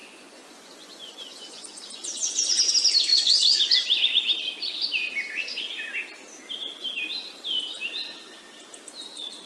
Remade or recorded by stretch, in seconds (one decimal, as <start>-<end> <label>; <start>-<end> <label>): 0.0-2.7 remade; 2.7-3.1 recorded; 3.1-3.6 remade; 3.6-9.5 recorded